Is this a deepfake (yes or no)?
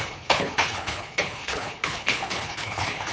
yes